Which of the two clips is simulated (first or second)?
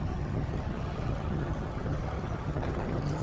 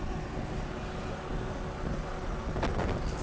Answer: first